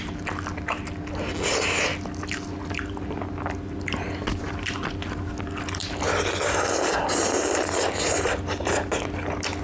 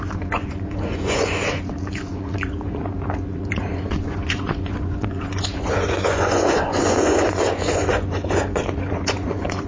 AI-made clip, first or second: second